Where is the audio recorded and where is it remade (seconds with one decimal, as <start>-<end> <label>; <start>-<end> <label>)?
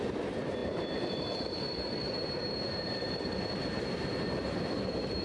0.0-5.2 remade